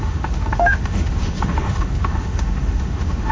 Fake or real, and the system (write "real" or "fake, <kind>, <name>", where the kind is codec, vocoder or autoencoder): fake, autoencoder, DAC-VAE